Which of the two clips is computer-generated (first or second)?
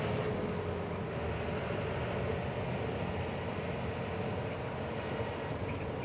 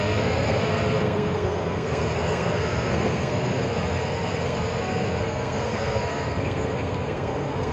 second